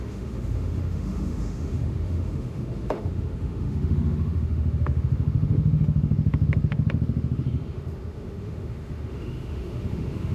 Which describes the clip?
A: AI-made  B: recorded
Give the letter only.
A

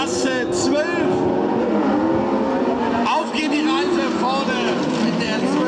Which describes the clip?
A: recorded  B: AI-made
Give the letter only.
A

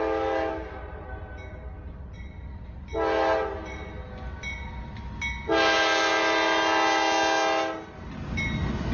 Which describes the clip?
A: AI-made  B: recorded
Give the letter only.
B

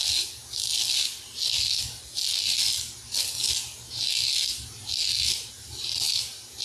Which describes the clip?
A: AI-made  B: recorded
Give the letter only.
B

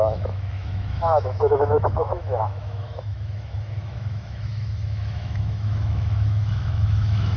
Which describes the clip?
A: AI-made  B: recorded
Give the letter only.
A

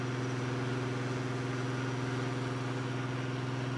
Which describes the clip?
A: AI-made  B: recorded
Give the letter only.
B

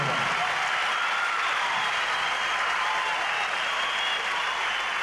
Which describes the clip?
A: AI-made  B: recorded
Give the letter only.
B